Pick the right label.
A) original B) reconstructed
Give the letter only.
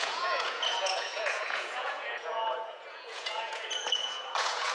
B